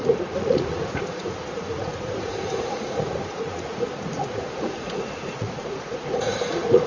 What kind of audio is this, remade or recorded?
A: remade